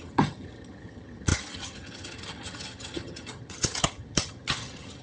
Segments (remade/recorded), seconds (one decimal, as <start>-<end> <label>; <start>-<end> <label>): 0.0-5.0 remade